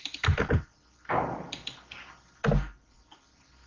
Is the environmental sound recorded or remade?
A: recorded